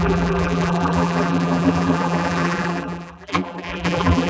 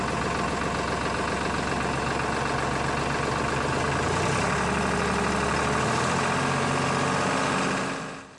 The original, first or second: second